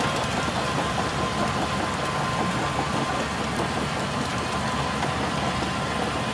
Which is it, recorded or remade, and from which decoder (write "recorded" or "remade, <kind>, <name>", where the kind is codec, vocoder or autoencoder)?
recorded